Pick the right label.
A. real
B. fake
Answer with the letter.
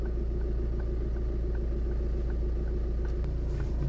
A